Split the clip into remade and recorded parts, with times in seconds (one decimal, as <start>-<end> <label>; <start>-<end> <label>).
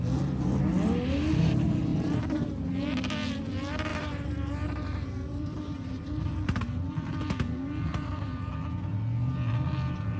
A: 0.0-1.9 recorded; 1.9-2.5 remade; 2.5-3.9 recorded; 3.9-6.1 remade; 6.1-7.9 recorded; 7.9-8.5 remade; 8.5-10.2 recorded